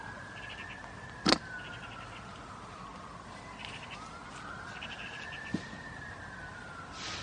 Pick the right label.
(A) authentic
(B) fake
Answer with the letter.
A